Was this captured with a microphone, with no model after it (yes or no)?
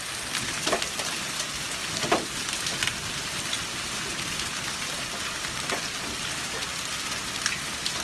yes